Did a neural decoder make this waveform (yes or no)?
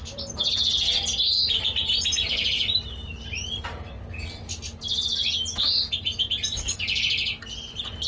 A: no